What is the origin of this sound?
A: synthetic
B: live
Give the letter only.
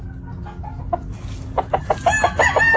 B